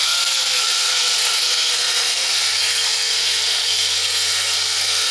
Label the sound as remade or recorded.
remade